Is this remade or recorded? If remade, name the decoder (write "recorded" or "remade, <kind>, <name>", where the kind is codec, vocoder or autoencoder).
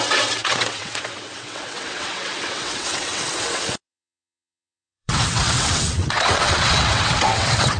remade, vocoder, WaveNeXt